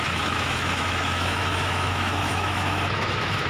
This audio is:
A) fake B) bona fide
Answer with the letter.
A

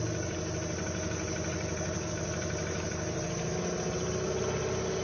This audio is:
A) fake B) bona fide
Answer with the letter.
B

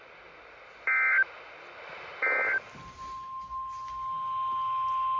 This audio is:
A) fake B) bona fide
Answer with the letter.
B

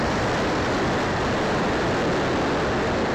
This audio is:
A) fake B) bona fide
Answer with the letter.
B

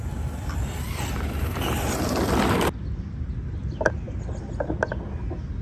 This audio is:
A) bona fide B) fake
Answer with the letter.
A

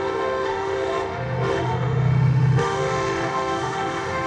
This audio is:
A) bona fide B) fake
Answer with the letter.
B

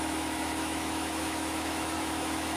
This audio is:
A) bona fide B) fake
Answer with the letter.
B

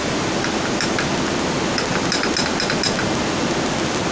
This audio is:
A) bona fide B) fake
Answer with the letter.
A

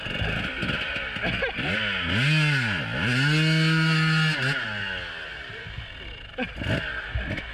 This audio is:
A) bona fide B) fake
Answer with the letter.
A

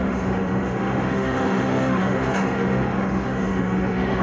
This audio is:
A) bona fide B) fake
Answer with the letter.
B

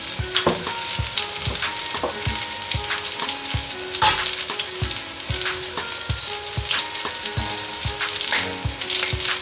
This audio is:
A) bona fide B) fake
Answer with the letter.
A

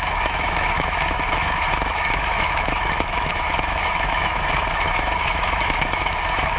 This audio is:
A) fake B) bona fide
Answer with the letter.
A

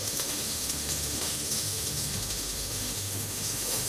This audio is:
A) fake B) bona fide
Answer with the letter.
A